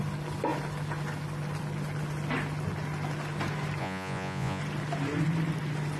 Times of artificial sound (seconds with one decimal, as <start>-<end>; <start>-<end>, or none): 3.8-4.6